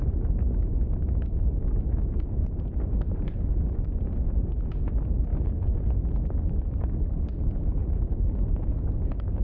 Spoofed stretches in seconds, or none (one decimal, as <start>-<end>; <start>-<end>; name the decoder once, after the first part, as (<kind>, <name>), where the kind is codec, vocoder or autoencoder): 5.3-5.9 (codec, DAC)